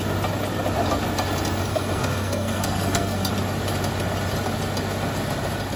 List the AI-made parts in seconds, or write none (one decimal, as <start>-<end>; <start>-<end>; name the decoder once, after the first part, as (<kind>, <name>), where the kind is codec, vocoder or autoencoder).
1.7-3.3 (codec, SNAC)